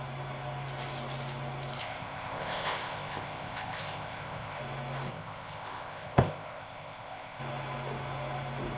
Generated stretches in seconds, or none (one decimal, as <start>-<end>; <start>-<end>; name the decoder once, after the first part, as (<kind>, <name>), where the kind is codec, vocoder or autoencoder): 1.8-4.6 (codec, ZipCodec); 5.1-7.4